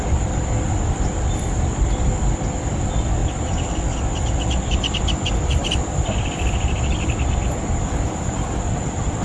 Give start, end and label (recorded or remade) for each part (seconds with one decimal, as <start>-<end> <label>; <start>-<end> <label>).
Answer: 0.0-9.2 recorded